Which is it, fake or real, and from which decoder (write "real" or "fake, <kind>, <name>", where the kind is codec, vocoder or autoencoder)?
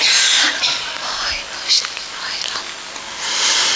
real